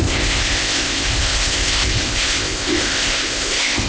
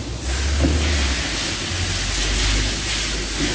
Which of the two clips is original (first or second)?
second